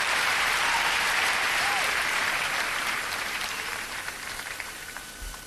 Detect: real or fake fake